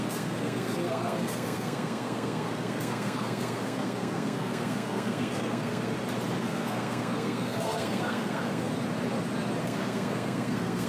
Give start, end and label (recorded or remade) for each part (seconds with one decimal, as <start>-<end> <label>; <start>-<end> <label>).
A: 0.0-5.9 remade; 5.9-6.4 recorded; 6.4-8.7 remade; 8.7-9.6 recorded; 9.6-10.9 remade